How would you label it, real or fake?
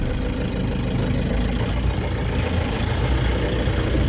real